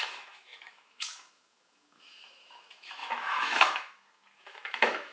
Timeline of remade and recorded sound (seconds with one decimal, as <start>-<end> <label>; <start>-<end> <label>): 0.0-5.1 remade